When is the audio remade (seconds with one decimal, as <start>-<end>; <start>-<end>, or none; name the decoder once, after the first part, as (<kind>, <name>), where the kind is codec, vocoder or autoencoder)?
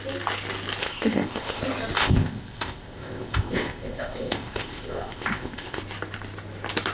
0.8-1.6 (codec, ZipCodec); 2.0-5.8